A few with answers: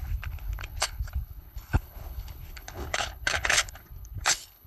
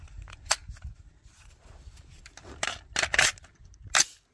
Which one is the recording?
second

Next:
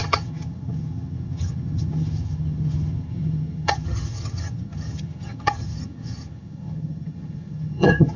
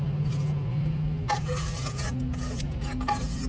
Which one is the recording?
second